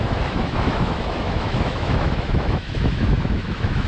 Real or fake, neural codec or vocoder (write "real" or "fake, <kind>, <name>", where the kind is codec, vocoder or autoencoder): fake, autoencoder, DAC-VAE